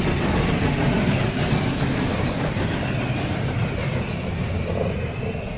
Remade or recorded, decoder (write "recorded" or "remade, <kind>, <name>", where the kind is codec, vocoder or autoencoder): recorded